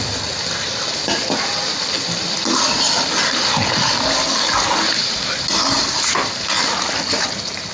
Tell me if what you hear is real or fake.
real